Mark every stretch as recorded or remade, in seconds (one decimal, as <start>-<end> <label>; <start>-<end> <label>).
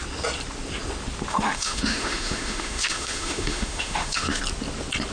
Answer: 0.0-1.3 recorded; 1.3-4.4 remade; 4.4-5.1 recorded